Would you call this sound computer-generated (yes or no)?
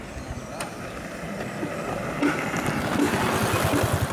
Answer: no